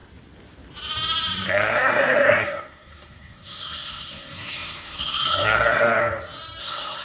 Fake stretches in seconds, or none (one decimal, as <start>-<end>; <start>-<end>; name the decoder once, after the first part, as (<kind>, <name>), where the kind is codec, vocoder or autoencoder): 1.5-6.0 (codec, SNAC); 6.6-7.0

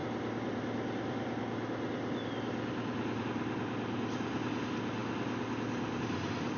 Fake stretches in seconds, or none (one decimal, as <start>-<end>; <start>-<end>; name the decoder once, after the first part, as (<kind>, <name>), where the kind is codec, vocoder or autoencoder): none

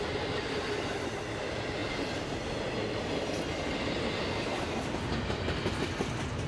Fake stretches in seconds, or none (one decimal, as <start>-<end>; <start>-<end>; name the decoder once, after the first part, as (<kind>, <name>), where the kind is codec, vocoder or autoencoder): none

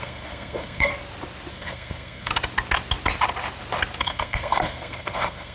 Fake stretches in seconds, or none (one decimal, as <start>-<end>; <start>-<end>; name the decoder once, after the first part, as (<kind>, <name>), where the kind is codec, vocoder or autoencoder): 0.0-0.9 (codec, SNAC); 1.5-2.3; 4.0-5.5

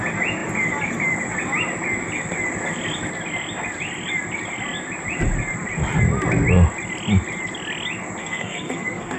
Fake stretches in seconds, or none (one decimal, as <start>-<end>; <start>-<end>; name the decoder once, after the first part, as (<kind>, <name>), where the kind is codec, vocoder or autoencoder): 8.2-9.2 (codec, SNAC)

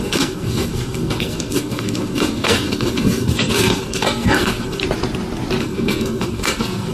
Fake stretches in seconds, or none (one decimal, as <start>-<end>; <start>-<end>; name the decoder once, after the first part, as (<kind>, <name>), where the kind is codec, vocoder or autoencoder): 0.0-4.8 (codec, SNAC); 5.6-6.9